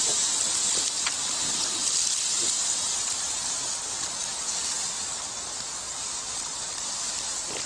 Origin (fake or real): real